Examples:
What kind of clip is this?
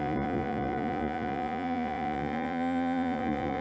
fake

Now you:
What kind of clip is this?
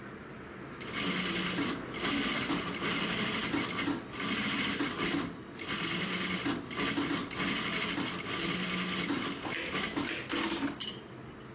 real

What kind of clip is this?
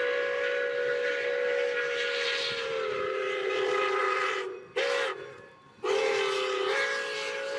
real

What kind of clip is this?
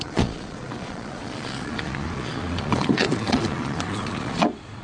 fake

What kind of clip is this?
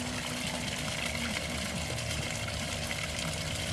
real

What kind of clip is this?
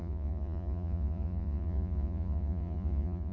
fake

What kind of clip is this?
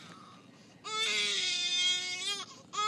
real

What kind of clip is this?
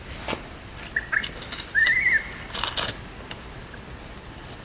real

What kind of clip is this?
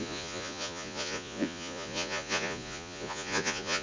fake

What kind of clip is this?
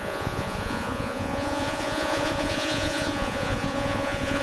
fake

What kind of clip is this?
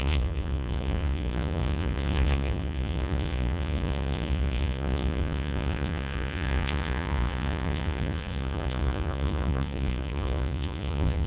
fake